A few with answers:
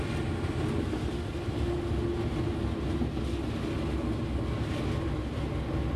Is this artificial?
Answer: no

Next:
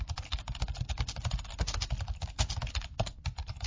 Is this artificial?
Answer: no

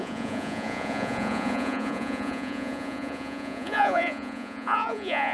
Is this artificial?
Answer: yes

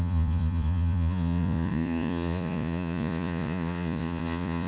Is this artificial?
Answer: yes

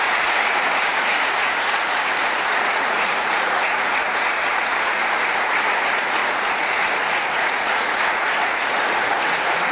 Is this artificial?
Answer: yes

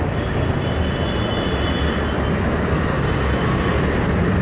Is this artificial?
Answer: no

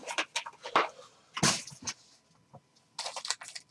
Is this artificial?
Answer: no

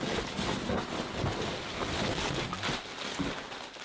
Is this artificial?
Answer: no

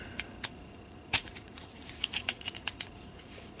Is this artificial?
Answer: yes